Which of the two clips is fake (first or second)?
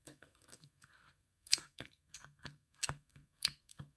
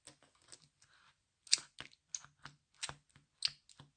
first